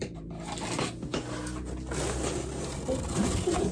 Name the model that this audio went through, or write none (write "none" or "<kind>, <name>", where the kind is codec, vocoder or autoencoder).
none